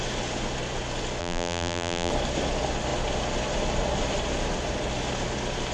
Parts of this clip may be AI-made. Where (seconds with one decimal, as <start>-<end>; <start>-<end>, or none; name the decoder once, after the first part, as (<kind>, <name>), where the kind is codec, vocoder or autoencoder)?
1.2-2.1 (vocoder, BigVGAN v2)